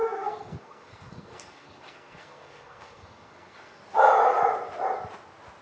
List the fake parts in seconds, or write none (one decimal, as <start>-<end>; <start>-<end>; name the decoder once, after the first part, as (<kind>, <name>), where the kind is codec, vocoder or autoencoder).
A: 0.0-3.8 (codec, SNAC)